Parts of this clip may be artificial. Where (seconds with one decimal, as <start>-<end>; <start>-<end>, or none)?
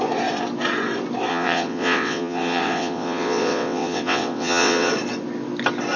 1.3-4.9